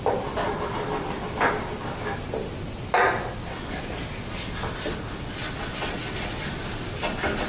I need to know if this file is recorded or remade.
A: recorded